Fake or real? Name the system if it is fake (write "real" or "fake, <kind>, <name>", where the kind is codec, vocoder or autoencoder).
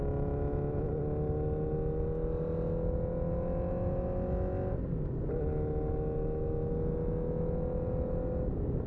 real